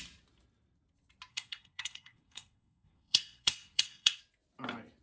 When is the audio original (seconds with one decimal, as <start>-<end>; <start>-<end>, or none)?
0.0-1.3; 4.2-5.0